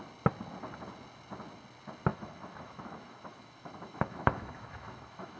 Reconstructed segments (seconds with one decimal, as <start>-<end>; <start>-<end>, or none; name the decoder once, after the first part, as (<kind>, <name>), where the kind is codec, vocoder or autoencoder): 2.1-5.4 (autoencoder, DAC-VAE)